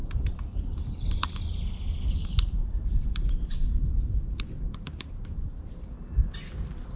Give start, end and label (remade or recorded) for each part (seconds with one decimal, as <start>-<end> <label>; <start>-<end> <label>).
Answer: 0.0-0.9 remade; 0.9-2.2 recorded; 2.2-5.1 remade; 5.1-7.0 recorded